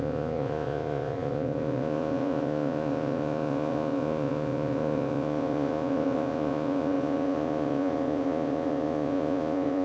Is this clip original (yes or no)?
no